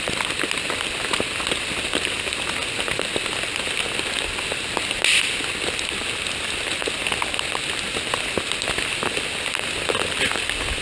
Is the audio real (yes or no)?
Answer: yes